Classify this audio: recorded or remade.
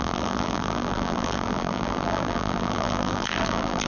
remade